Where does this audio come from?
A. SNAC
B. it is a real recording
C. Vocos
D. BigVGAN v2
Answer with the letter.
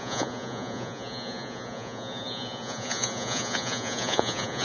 C